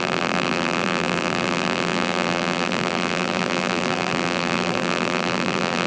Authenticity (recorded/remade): remade